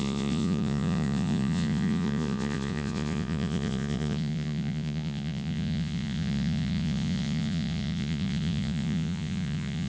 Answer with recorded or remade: remade